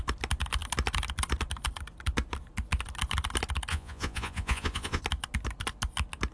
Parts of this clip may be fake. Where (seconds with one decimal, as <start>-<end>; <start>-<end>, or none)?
3.7-5.0